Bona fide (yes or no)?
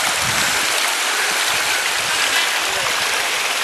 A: yes